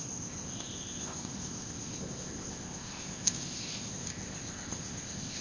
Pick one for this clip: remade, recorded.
remade